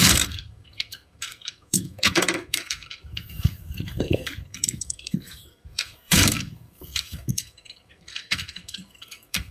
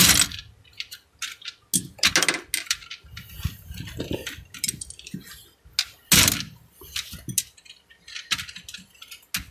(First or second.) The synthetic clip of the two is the first